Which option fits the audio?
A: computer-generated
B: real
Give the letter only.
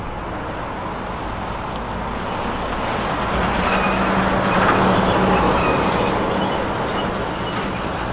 B